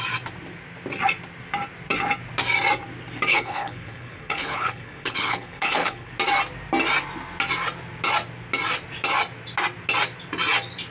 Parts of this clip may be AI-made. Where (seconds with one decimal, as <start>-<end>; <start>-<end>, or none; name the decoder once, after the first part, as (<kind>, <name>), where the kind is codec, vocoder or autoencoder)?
3.3-6.1 (codec, HILCodec)